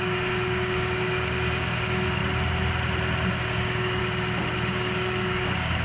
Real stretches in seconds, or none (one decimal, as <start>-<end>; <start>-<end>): 2.2-3.3; 4.0-4.7